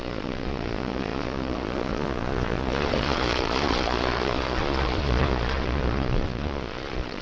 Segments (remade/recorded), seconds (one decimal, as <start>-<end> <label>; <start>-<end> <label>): 0.0-7.2 remade